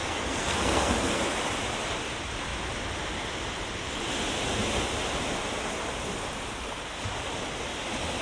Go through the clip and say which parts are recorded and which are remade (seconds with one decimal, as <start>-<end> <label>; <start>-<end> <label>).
0.0-1.2 remade; 1.2-8.2 recorded